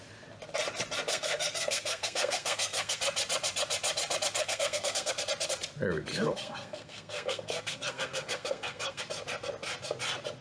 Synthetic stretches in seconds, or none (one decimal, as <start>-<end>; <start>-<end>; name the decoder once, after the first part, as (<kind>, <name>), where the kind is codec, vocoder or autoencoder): 1.1-3.0 (codec, SNAC); 4.4-5.1; 6.1-9.0